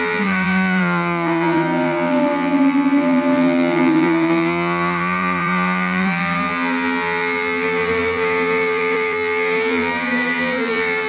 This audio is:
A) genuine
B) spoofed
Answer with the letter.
B